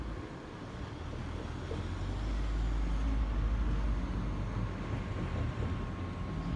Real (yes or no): yes